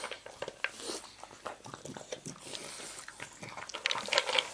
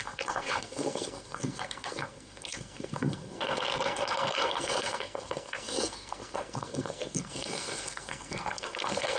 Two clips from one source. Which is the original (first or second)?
first